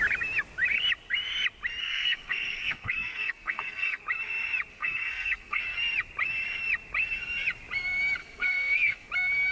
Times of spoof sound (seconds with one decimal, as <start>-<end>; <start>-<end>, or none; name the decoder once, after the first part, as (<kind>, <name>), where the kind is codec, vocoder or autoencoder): 1.8-4.0 (codec, SNAC); 4.7-5.6; 8.2-9.1